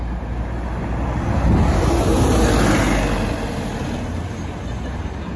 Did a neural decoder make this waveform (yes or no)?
no